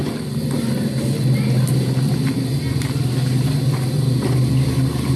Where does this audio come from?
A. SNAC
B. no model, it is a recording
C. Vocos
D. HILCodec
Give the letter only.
B